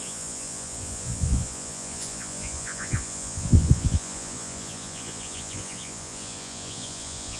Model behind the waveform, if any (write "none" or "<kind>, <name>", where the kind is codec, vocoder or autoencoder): vocoder, Vocos